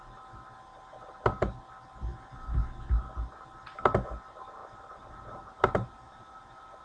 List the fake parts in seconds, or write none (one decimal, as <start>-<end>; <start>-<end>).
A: 4.6-6.8